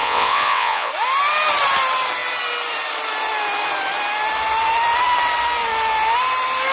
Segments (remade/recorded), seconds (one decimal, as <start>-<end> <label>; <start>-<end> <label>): 0.0-0.9 remade; 0.9-6.7 recorded